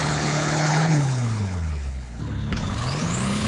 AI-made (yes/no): yes